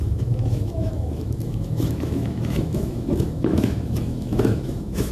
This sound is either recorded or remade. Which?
remade